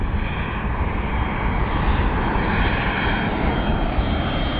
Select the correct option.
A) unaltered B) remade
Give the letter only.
A